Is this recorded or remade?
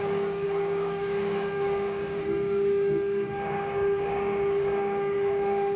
remade